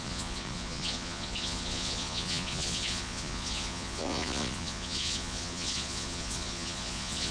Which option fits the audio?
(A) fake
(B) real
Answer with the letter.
A